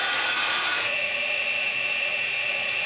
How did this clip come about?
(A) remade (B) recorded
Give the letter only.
A